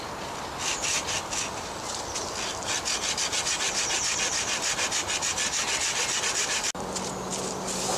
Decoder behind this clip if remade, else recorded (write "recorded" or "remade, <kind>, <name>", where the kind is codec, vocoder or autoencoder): recorded